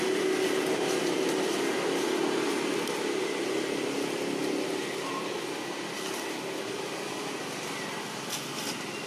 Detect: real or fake real